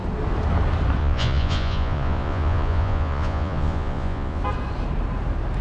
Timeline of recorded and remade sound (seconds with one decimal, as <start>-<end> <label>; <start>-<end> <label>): 0.0-1.0 recorded; 1.0-4.4 remade; 4.4-5.6 recorded